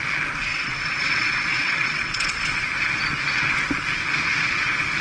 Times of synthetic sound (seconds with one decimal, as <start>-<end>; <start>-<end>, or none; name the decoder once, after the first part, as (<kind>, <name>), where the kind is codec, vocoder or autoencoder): 0.5-2.6 (vocoder, WaveNeXt)